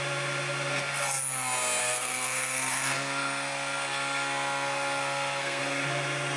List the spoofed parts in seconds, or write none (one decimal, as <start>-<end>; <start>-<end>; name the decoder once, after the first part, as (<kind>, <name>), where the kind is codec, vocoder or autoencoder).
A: 1.8-5.6 (codec, SNAC)